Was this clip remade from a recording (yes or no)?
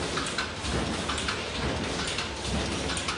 no